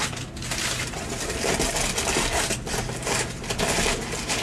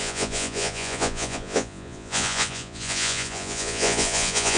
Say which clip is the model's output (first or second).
second